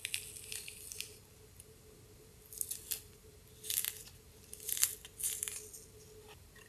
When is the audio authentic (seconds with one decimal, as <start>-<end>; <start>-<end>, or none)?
0.0-6.7